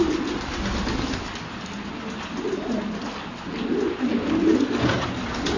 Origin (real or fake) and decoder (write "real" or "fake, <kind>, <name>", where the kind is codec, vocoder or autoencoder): real